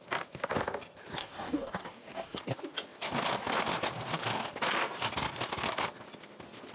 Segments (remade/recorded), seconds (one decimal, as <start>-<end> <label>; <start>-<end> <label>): 0.0-1.2 recorded; 1.2-2.4 remade; 2.4-6.7 recorded